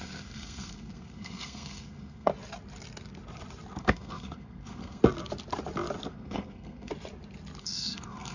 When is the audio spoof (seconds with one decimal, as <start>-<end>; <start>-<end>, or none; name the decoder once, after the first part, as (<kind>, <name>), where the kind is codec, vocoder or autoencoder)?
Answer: 0.0-2.3 (codec, SNAC); 3.8-5.0; 6.1-6.9; 7.6-8.3